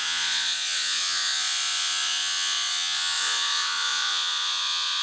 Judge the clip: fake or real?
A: fake